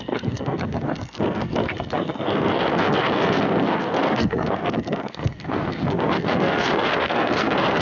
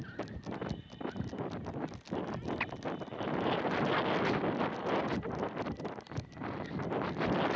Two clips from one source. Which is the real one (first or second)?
second